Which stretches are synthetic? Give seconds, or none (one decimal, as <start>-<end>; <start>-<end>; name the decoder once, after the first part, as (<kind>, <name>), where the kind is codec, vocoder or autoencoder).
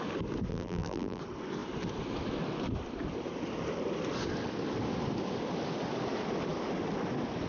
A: 0.5-1.2 (vocoder, BigVGAN v2)